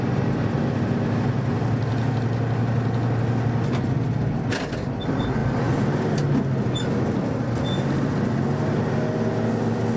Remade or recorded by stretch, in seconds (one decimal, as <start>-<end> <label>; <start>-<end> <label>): 0.0-10.0 recorded